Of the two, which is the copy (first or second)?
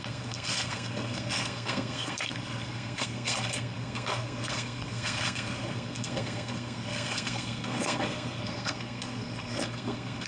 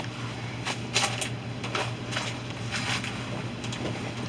first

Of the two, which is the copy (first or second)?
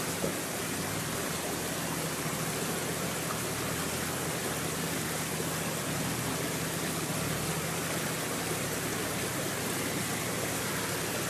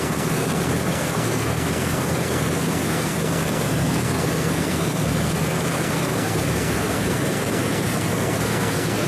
second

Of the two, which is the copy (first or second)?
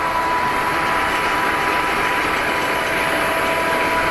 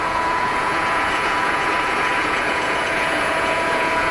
second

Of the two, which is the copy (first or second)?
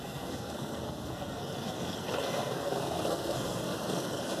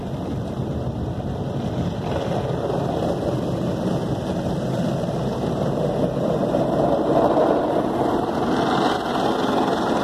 first